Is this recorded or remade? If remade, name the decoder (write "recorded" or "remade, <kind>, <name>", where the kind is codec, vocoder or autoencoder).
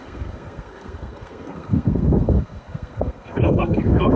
remade, codec, SNAC